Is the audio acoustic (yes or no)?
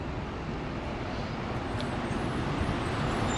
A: yes